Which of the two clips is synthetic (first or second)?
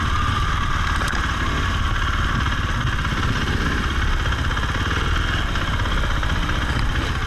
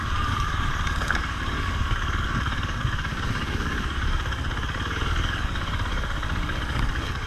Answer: second